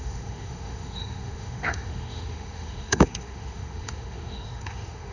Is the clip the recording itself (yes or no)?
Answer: no